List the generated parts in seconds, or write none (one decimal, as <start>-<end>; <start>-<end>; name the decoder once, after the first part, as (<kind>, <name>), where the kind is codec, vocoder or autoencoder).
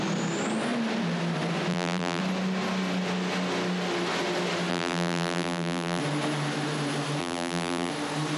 1.7-2.2 (vocoder, BigVGAN v2); 4.7-6.0; 7.2-7.9